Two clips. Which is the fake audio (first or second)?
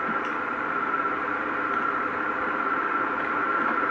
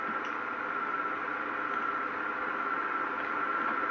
first